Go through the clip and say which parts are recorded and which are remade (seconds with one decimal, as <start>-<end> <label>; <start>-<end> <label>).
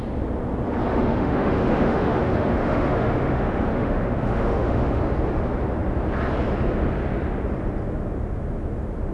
0.0-0.9 recorded; 0.9-5.0 remade; 5.0-9.1 recorded